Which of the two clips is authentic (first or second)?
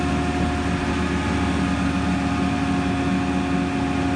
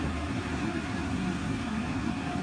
first